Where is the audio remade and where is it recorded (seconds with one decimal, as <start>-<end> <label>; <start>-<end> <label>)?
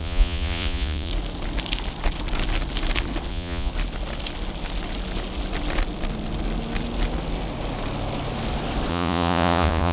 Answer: 0.0-1.1 remade; 1.1-3.3 recorded; 3.3-3.7 remade; 3.7-8.9 recorded; 8.9-9.9 remade